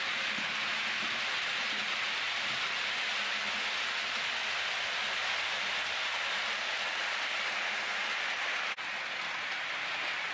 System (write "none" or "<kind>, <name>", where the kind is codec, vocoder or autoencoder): none